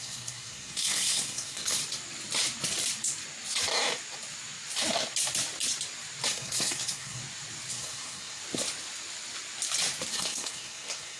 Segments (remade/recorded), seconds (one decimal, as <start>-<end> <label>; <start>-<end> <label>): 0.0-1.8 remade; 1.8-6.3 recorded; 6.3-7.2 remade; 7.2-7.7 recorded; 7.7-8.4 remade; 8.4-10.1 recorded; 10.1-11.2 remade